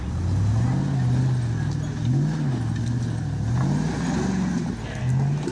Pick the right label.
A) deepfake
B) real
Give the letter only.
B